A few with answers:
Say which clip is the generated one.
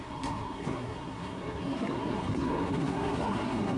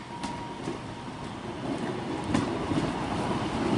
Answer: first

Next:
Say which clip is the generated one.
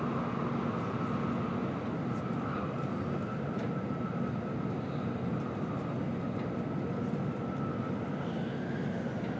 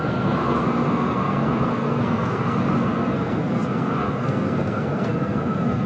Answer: second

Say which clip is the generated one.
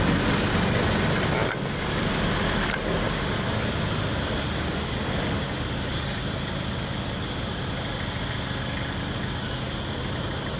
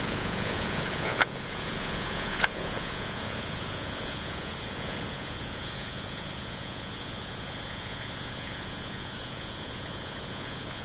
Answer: second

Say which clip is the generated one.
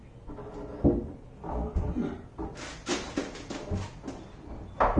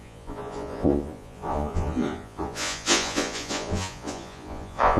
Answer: second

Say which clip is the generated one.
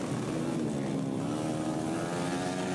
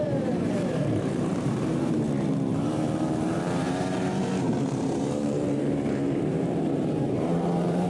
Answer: second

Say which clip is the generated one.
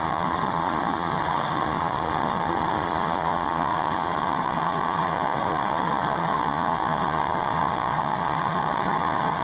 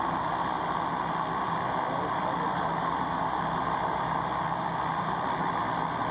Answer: first